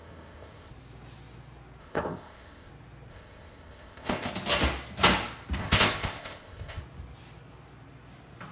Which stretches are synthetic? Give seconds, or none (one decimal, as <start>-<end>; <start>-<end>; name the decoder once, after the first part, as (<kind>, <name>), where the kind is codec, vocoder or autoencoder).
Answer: 0.0-0.7 (codec, ZipCodec); 1.8-2.7; 3.1-4.3; 5.6-6.8